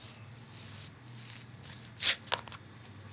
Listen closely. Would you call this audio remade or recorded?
recorded